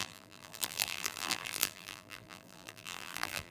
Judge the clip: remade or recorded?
remade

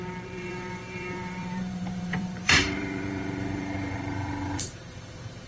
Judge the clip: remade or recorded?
remade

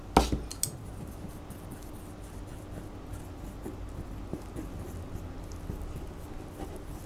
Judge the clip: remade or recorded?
recorded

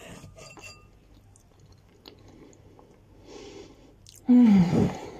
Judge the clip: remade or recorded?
recorded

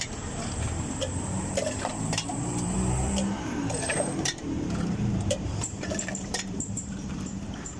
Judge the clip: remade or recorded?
remade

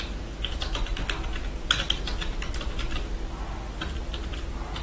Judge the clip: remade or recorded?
recorded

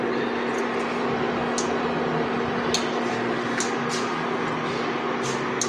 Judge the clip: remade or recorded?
recorded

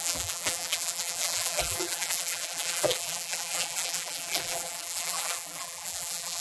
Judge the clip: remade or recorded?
remade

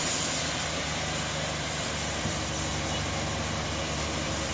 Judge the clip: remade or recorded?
remade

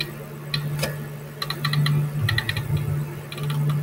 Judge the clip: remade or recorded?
recorded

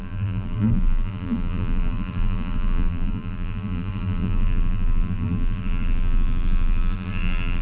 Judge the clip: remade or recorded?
remade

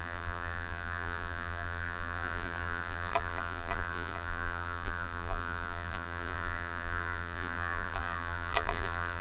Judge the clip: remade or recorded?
remade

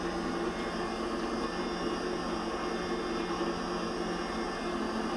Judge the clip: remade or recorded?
recorded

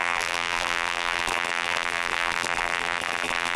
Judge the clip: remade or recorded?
remade